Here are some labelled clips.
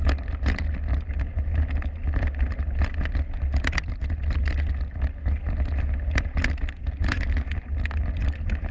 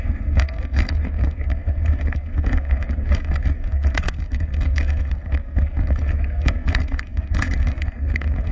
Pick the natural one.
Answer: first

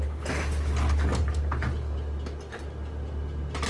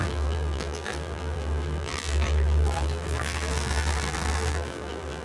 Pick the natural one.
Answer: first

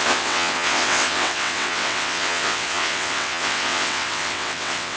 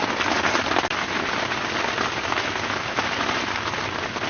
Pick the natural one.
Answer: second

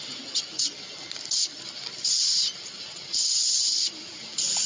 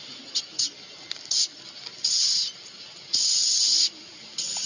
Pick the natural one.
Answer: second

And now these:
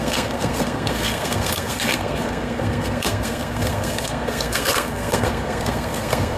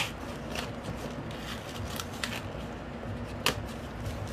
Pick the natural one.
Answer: second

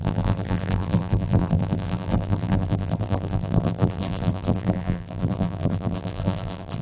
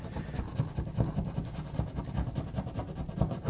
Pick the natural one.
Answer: second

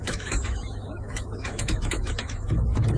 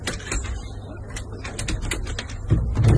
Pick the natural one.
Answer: second